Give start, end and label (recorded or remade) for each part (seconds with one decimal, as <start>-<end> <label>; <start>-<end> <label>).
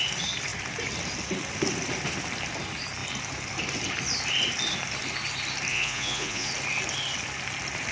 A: 0.0-5.7 recorded; 5.7-6.5 remade; 6.5-7.9 recorded